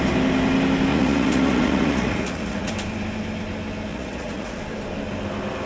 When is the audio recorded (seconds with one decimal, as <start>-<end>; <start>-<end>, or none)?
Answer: 0.0-0.9; 2.7-3.9; 4.6-5.7

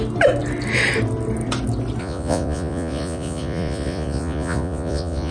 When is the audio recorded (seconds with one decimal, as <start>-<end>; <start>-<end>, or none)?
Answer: 0.0-2.0

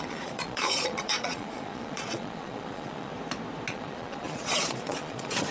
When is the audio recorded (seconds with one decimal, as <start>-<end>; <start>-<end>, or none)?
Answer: 3.1-3.7

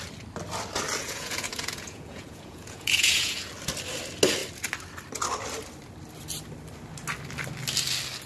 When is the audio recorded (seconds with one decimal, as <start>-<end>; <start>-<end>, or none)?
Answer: 0.0-1.0; 3.5-8.3